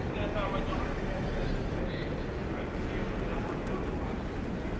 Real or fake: real